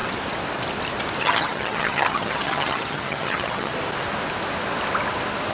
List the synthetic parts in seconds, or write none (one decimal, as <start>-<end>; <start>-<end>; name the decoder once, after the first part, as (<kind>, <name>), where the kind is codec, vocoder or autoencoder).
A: 1.2-3.7 (vocoder, HiFi-GAN)